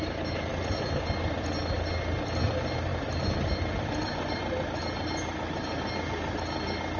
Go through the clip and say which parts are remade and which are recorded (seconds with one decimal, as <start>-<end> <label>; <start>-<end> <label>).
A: 0.0-7.0 recorded